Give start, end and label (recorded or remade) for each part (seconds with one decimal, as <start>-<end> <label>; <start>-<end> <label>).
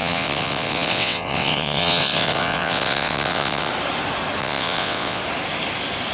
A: 0.0-3.7 remade; 3.7-4.4 recorded; 4.4-5.2 remade; 5.2-6.1 recorded